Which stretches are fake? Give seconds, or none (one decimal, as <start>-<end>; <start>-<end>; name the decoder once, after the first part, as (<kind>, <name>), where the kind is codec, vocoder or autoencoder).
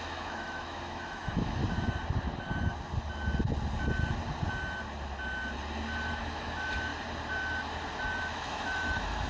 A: 0.0-1.6 (autoencoder, DAC-VAE); 6.1-6.9; 8.2-9.3